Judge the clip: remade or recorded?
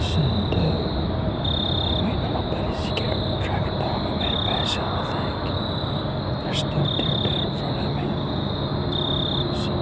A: recorded